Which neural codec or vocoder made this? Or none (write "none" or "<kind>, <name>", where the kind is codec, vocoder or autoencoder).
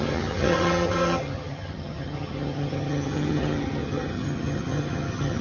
vocoder, HiFi-GAN